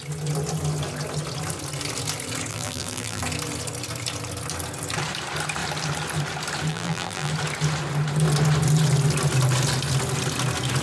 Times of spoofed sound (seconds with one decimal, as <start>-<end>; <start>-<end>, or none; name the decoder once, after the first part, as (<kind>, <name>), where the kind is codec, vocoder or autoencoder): 2.5-3.2 (vocoder, BigVGAN v2); 6.7-7.3